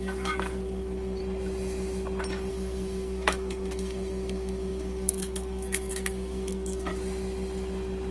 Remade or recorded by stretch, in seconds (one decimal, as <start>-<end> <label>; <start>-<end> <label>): 0.0-1.2 remade; 1.2-2.5 recorded; 2.5-6.9 remade; 6.9-8.1 recorded